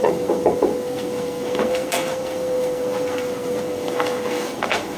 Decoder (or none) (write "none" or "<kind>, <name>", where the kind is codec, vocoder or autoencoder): codec, SNAC